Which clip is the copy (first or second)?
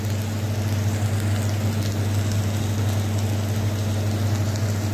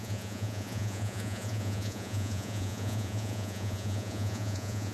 second